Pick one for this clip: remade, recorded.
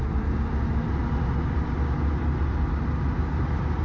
recorded